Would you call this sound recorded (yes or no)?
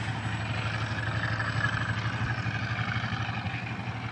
yes